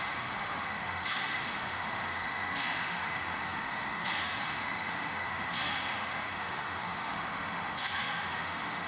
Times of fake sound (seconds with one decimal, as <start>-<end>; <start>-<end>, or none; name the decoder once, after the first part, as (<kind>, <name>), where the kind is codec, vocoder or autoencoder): 0.0-8.9 (autoencoder, DAC-VAE)